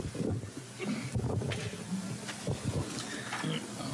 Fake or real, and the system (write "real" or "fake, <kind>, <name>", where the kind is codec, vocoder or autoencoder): real